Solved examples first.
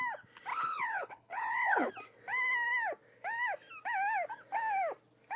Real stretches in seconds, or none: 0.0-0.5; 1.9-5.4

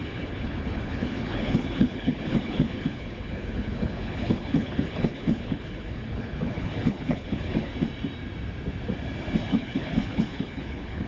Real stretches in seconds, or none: 7.7-9.5

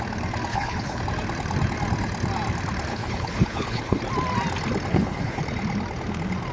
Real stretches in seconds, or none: 0.0-0.5; 1.0-2.9; 4.0-4.9; 5.4-6.5

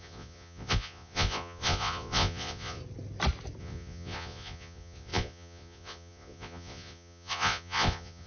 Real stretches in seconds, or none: 2.8-3.6

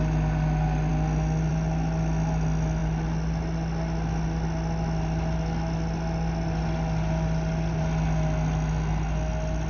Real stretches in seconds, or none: 0.0-9.7

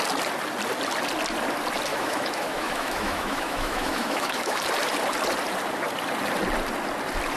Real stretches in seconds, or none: 0.0-1.9; 4.6-7.4

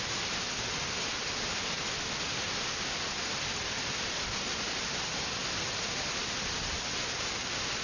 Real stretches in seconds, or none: 0.0-7.8

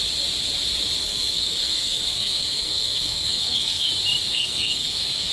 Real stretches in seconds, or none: 0.0-1.0; 3.9-4.3